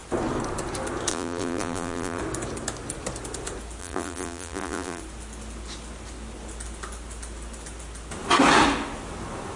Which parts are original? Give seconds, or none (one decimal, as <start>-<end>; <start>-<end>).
0.0-1.1; 2.2-3.8; 5.0-9.6